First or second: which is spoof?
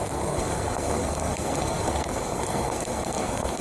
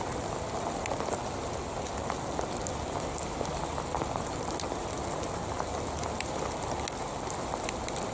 first